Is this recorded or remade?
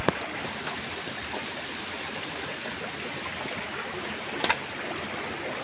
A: recorded